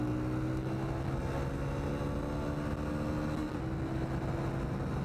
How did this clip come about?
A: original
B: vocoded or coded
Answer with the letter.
A